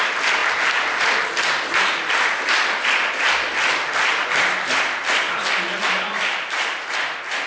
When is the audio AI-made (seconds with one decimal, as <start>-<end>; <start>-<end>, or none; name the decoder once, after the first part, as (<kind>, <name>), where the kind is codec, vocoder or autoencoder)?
none